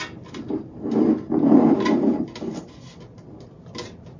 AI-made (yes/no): no